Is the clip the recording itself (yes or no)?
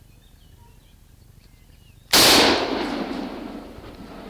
yes